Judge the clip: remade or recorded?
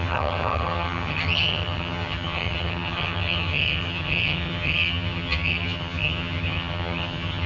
remade